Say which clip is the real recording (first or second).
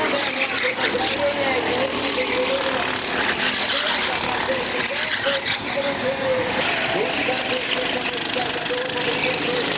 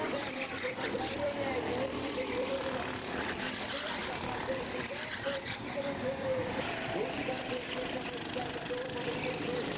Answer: first